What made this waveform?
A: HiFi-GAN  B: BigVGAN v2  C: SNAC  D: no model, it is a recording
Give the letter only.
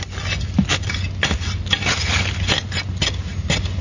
D